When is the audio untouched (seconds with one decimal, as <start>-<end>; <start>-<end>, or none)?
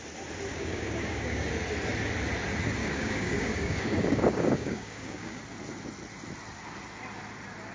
0.0-0.5; 1.5-2.8; 5.4-7.7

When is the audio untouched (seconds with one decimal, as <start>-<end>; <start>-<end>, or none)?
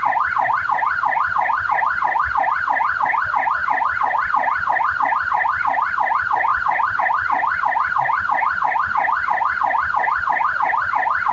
0.0-11.3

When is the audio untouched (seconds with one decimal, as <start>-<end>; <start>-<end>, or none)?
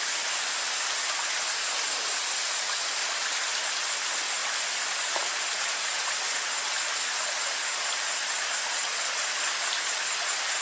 0.0-10.6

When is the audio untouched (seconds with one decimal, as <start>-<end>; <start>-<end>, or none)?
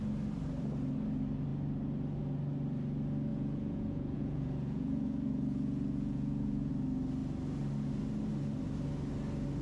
0.0-3.3; 6.7-9.6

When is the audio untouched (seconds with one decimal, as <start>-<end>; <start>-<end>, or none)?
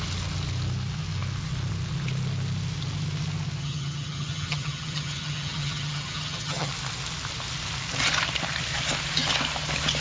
0.0-3.6; 6.7-10.0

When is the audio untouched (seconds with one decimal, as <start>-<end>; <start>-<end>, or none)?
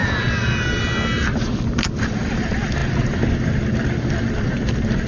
0.0-0.8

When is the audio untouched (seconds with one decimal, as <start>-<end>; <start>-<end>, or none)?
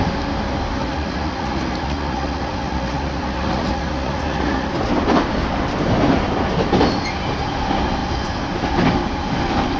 0.0-0.8; 4.7-9.8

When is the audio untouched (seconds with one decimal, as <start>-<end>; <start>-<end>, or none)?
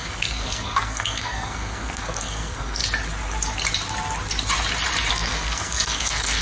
2.8-5.1